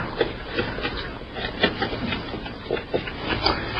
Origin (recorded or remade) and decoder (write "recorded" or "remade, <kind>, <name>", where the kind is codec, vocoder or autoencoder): recorded